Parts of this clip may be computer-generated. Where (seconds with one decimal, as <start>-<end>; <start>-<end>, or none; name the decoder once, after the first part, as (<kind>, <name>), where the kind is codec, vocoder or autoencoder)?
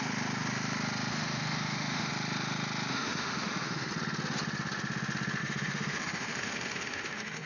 1.1-2.1 (autoencoder, DAC-VAE); 2.9-3.9; 5.4-7.5